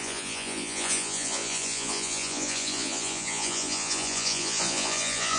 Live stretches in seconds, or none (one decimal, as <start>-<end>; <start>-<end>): none